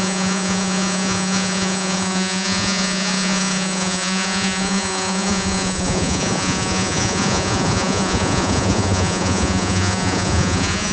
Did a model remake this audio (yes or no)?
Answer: yes